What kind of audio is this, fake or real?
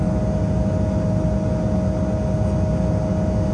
real